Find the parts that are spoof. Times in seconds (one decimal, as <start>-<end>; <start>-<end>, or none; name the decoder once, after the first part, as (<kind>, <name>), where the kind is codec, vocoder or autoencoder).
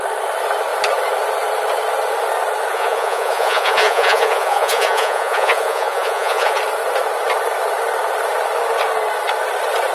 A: 2.7-6.6 (vocoder, Vocos)